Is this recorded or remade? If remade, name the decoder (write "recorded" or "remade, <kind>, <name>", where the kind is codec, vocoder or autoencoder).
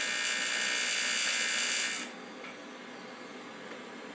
recorded